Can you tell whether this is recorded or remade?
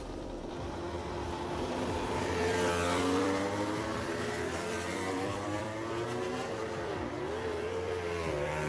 remade